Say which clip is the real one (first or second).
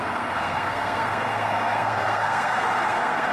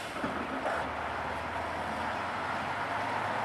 second